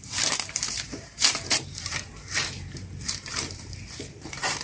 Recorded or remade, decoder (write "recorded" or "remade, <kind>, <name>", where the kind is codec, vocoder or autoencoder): remade, vocoder, BigVGAN v2